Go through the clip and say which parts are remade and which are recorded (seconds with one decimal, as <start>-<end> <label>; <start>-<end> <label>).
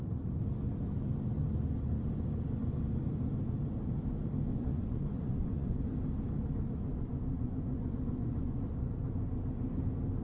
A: 0.0-4.5 recorded; 4.5-5.8 remade; 5.8-6.9 recorded; 6.9-8.6 remade; 8.6-10.2 recorded